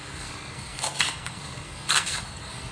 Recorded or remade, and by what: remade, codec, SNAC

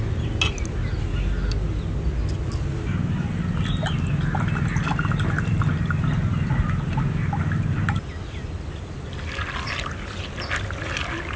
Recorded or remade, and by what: recorded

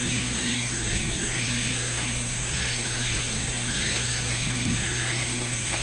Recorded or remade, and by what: remade, codec, SNAC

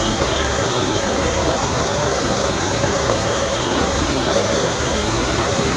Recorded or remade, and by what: remade, codec, SNAC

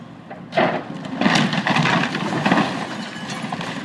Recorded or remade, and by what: recorded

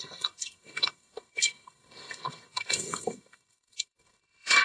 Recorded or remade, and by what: remade, codec, SNAC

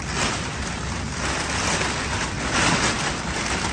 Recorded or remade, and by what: recorded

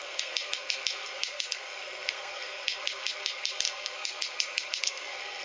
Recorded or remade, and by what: remade, codec, SNAC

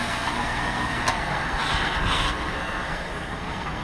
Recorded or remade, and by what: remade, codec, SNAC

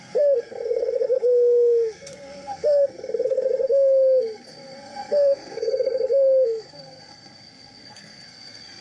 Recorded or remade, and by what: remade, codec, SNAC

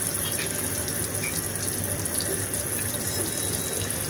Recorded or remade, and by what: recorded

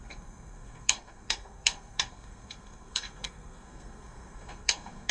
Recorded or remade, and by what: remade, codec, SNAC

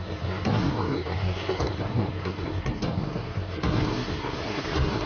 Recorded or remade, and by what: remade, codec, SNAC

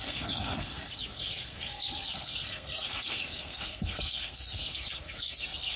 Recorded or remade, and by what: remade, codec, SNAC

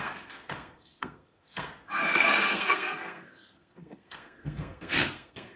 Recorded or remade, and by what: remade, codec, SNAC